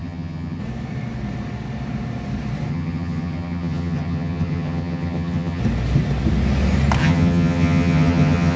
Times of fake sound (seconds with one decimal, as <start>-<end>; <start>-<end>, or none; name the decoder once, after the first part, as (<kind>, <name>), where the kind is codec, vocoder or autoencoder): 0.0-0.6 (vocoder, HiFi-GAN); 2.7-5.6; 7.0-8.6